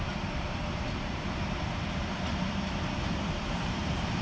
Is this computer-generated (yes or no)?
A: yes